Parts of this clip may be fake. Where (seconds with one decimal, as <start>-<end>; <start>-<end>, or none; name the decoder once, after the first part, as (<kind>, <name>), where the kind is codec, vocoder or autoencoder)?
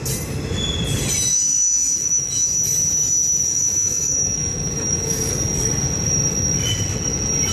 1.3-2.5 (autoencoder, DAC-VAE); 3.5-5.3